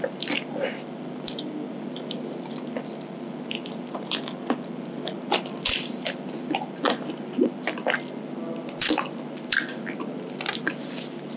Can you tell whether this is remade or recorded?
recorded